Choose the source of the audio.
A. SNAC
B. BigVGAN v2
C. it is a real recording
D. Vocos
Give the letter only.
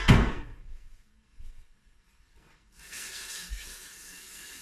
A